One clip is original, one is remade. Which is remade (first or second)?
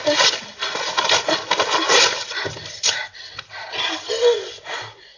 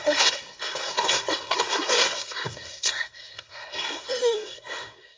second